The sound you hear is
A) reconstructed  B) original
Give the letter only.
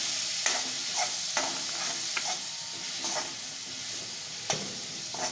B